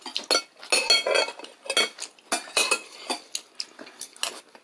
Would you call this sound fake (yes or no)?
no